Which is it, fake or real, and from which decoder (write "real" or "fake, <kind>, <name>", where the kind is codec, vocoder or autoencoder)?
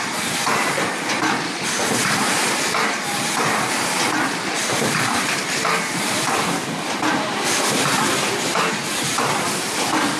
fake, vocoder, BigVGAN v2